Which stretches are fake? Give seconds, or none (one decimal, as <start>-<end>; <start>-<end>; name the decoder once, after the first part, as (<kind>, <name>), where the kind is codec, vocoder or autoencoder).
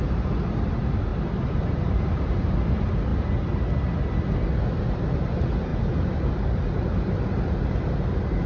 1.1-2.5 (vocoder, BigVGAN v2); 5.7-7.1